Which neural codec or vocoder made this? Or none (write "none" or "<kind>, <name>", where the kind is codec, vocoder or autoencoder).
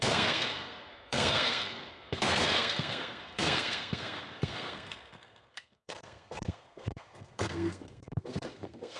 codec, SNAC